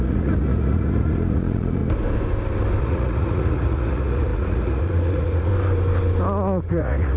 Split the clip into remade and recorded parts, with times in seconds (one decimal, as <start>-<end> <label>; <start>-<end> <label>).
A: 0.0-1.8 remade; 1.8-2.8 recorded; 2.8-5.5 remade; 5.5-6.7 recorded; 6.7-7.2 remade